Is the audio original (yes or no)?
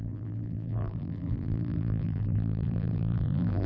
no